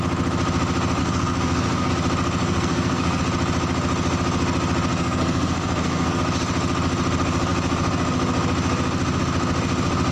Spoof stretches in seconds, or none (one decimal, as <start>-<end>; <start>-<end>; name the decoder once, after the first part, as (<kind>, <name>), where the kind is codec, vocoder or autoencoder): 1.0-1.9 (codec, SNAC); 2.4-3.2; 4.9-6.2

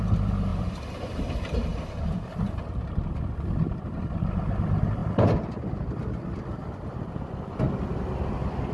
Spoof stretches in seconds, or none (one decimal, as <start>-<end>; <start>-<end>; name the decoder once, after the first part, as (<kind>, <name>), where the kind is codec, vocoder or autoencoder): none

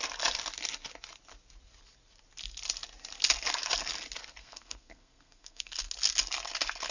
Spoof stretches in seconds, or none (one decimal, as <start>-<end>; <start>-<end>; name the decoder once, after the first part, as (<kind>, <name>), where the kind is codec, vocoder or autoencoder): 4.4-5.9 (codec, SNAC)